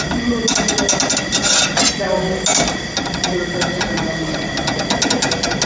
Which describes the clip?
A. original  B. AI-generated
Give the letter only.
A